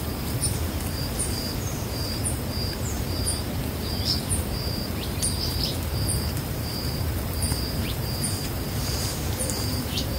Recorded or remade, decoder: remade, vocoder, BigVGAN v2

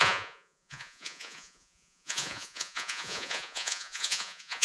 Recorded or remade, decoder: remade, vocoder, Vocos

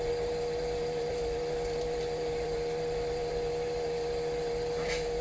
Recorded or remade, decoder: remade, vocoder, BigVGAN v2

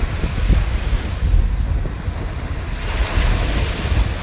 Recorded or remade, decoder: recorded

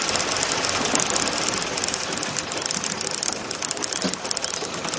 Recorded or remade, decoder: recorded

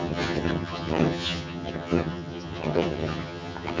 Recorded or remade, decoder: remade, vocoder, HiFi-GAN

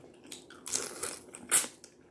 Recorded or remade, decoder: recorded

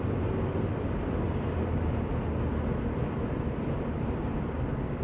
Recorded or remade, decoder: recorded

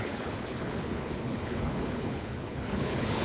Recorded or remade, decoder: remade, codec, HILCodec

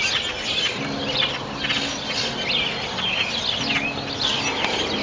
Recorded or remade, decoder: recorded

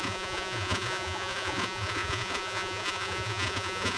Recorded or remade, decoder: remade, vocoder, Vocos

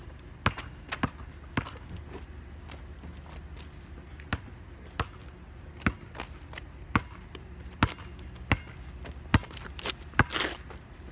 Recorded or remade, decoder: recorded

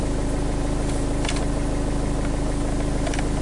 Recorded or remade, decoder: recorded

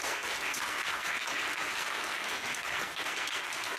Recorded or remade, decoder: remade, codec, SNAC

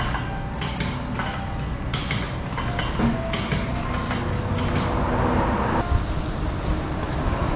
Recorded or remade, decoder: recorded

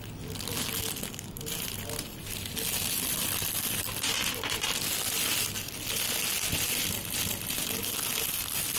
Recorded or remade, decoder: recorded